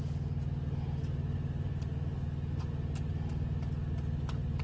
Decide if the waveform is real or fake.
real